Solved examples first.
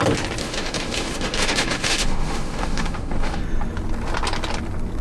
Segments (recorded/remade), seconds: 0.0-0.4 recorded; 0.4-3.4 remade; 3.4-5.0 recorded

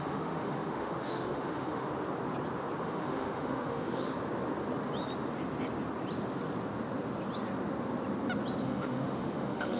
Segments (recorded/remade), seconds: 0.0-1.9 remade; 1.9-2.8 recorded; 2.8-4.1 remade; 4.1-8.6 recorded; 8.6-9.8 remade